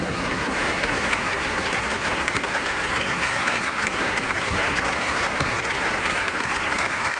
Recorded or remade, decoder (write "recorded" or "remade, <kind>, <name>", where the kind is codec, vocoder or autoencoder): remade, codec, SNAC